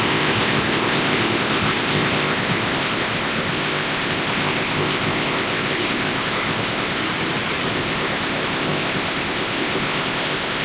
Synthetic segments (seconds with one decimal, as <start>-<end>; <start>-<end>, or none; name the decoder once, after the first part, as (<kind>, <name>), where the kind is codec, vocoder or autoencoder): 0.0-7.0 (codec, ZipCodec); 7.7-10.6